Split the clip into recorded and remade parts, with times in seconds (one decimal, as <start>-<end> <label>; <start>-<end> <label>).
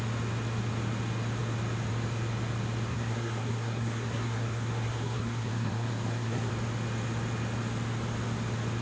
0.0-2.9 recorded; 2.9-6.5 remade; 6.5-8.8 recorded